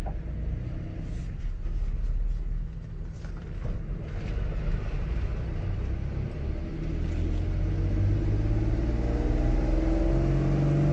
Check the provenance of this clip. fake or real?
real